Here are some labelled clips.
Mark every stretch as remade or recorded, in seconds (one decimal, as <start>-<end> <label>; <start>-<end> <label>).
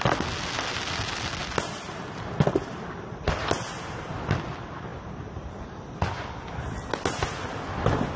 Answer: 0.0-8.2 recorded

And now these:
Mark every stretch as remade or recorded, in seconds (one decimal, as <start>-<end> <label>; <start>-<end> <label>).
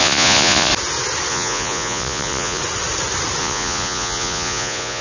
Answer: 0.0-0.7 remade; 0.7-1.3 recorded; 1.3-2.6 remade; 2.6-3.4 recorded; 3.4-5.0 remade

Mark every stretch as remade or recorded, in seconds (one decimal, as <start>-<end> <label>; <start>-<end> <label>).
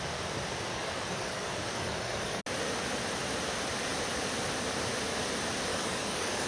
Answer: 0.0-0.7 recorded; 0.7-2.4 remade; 2.4-5.7 recorded; 5.7-6.5 remade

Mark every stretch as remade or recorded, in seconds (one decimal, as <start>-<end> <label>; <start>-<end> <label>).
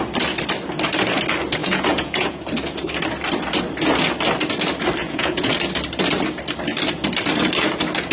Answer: 0.0-1.6 recorded; 1.6-2.4 remade; 2.4-5.0 recorded; 5.0-5.5 remade; 5.5-8.1 recorded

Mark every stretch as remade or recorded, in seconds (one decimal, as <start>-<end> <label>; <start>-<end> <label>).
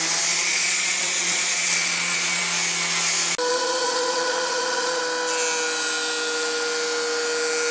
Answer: 0.0-0.5 recorded; 0.5-2.4 remade; 2.4-3.5 recorded; 3.5-5.0 remade; 5.0-7.7 recorded